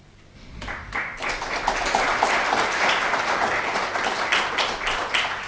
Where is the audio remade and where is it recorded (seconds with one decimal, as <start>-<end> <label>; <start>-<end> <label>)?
0.0-5.5 recorded